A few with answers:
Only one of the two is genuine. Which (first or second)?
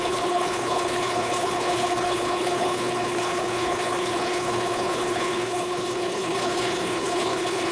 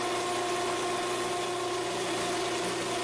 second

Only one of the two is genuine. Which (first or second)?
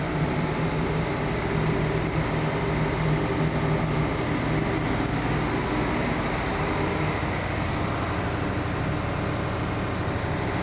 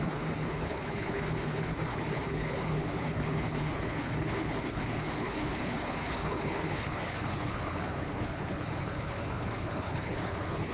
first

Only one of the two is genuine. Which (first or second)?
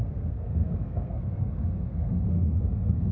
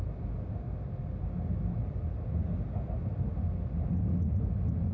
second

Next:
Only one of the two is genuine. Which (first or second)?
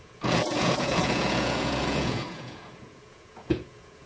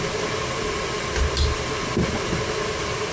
second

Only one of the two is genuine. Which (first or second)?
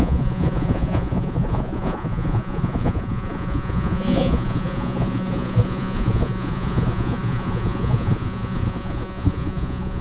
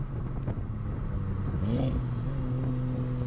second